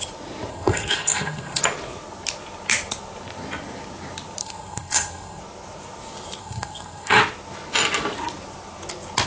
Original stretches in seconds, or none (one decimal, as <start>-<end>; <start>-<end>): 0.0-0.5; 1.6-4.4; 5.4-6.4; 7.2-9.3

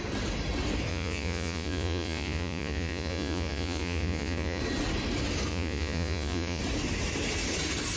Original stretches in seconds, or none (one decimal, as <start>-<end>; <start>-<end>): 0.0-0.9; 4.6-5.5; 6.6-8.0

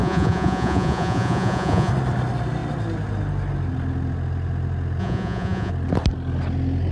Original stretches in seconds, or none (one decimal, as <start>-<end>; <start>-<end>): 1.9-5.0; 5.7-6.9

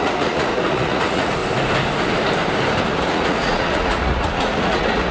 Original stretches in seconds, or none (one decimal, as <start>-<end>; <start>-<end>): 1.4-2.8